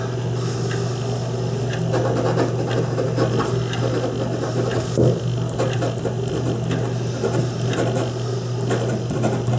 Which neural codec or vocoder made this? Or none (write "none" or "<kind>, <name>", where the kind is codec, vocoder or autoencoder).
none